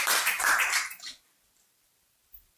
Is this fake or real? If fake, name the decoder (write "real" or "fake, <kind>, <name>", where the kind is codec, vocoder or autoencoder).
fake, vocoder, BigVGAN v2